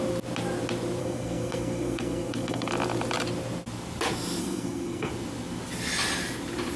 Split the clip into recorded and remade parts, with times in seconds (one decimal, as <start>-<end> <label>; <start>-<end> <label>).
0.0-1.0 recorded; 1.0-2.7 remade; 2.7-4.4 recorded; 4.4-5.1 remade; 5.1-6.8 recorded